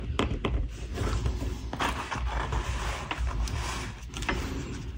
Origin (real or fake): real